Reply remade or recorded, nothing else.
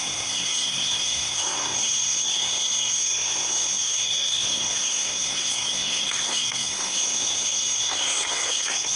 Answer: remade